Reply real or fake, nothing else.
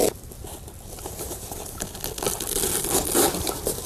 real